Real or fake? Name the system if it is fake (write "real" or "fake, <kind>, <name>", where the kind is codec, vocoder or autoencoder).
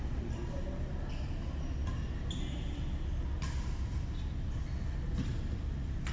real